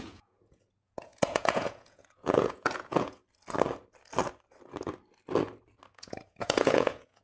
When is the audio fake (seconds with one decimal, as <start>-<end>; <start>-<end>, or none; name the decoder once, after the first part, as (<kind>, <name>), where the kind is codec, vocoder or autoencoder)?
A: 0.0-3.2 (vocoder, Vocos); 5.9-7.2